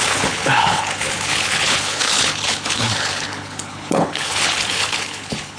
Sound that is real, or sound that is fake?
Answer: fake